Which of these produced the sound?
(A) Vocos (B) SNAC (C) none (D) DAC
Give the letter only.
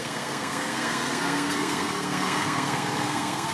B